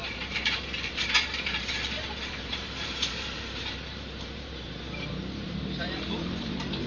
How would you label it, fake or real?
fake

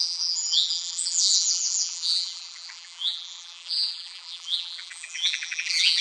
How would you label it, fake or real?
fake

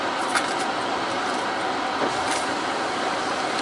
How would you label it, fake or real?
real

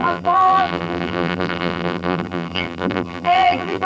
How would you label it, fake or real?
fake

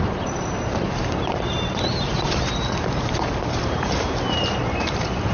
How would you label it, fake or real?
fake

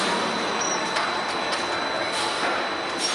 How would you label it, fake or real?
real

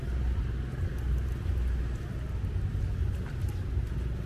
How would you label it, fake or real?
real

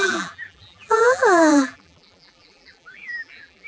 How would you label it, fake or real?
fake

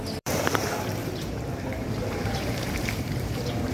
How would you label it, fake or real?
fake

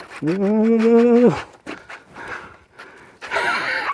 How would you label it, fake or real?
real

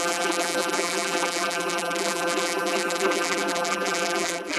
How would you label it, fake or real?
fake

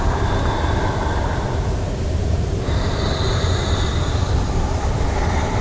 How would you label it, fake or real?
fake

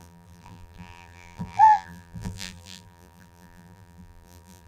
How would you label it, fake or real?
fake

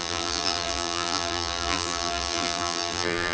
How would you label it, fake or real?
fake